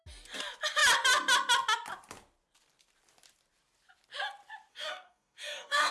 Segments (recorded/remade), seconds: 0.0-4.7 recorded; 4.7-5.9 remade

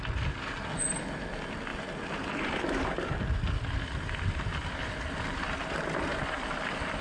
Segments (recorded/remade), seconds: 0.0-7.0 recorded

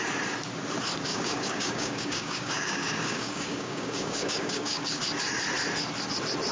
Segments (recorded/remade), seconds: 0.0-1.1 recorded; 1.1-5.0 remade; 5.0-6.5 recorded

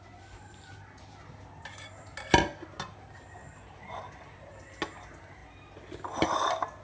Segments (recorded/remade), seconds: 0.0-6.8 recorded

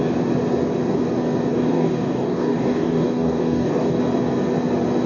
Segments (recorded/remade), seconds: 0.0-1.5 recorded; 1.5-4.0 remade; 4.0-5.1 recorded

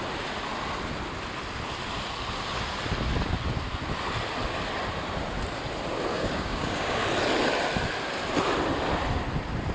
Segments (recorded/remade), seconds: 0.0-6.1 recorded; 6.1-7.0 remade; 7.0-9.7 recorded